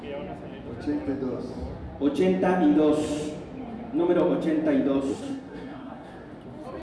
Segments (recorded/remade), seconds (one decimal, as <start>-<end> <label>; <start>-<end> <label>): 0.0-5.1 recorded; 5.1-6.1 remade; 6.1-6.8 recorded